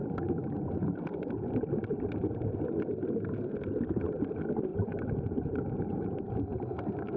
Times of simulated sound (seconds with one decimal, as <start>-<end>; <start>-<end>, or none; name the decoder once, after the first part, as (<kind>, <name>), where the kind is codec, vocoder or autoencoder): 4.7-6.1 (vocoder, BigVGAN v2)